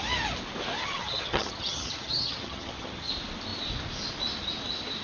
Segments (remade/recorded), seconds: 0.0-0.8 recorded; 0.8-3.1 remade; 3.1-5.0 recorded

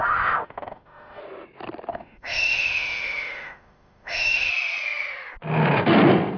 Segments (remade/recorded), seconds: 0.0-1.2 remade; 1.2-1.9 recorded; 1.9-4.5 remade; 4.5-6.4 recorded

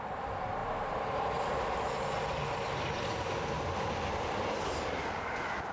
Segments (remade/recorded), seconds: 0.0-5.7 recorded

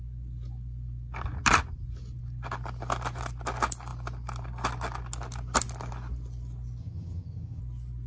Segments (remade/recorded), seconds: 0.0-6.8 recorded; 6.8-7.6 remade; 7.6-8.1 recorded

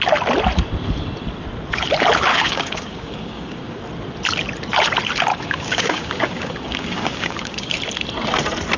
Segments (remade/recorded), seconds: 0.0-2.3 recorded; 2.3-3.8 remade; 3.8-5.3 recorded; 5.3-7.8 remade; 7.8-8.8 recorded

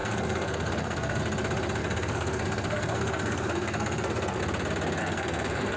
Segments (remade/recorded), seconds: 0.0-1.2 remade; 1.2-1.8 recorded; 1.8-4.4 remade; 4.4-5.0 recorded; 5.0-5.8 remade